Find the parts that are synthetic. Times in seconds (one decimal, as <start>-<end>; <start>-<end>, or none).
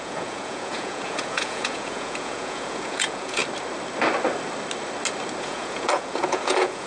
0.0-3.4; 5.4-6.9